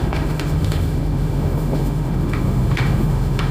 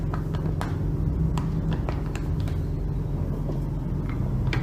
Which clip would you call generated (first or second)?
first